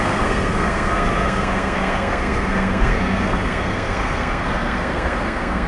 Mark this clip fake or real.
fake